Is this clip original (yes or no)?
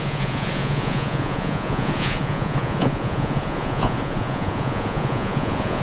no